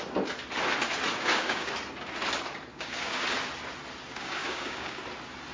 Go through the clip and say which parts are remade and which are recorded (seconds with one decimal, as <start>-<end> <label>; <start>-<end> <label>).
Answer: 0.0-1.1 recorded; 1.1-1.7 remade; 1.7-2.7 recorded; 2.7-3.2 remade; 3.2-4.1 recorded; 4.1-5.0 remade; 5.0-5.5 recorded